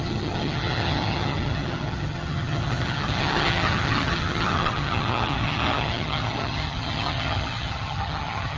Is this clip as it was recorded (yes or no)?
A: no